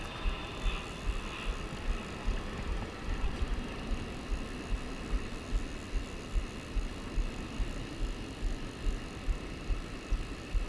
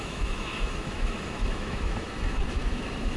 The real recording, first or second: first